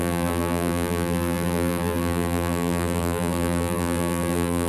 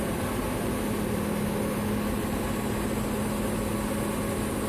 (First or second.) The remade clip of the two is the first